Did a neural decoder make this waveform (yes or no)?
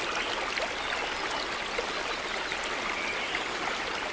no